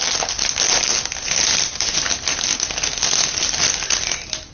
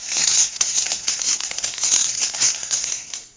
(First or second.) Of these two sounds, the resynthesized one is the second